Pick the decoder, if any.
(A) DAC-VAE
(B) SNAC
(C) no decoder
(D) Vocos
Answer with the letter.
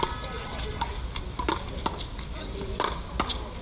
C